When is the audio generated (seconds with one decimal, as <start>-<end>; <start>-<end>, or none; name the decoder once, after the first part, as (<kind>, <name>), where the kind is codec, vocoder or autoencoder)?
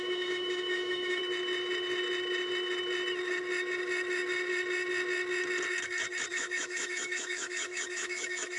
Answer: 0.0-1.2 (autoencoder, DAC-VAE); 6.3-8.6